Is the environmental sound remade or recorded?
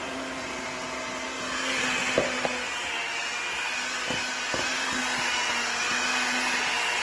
recorded